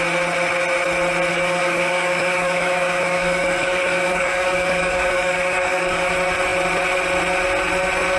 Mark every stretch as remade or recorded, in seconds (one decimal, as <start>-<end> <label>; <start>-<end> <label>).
0.0-1.3 recorded; 1.3-6.1 remade; 6.1-8.2 recorded